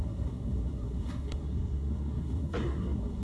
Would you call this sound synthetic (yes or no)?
yes